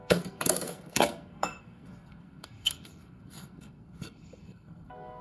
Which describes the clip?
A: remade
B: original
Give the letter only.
A